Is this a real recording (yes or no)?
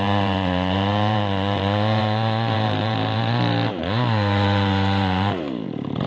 no